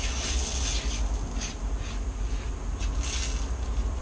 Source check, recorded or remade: recorded